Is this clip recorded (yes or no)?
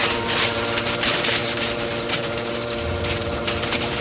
no